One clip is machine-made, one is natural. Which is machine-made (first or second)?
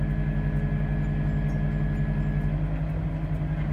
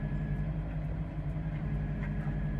second